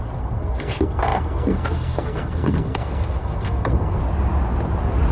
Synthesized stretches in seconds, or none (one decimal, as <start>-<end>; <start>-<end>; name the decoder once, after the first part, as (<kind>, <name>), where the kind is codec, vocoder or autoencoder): 0.0-4.0 (codec, SNAC)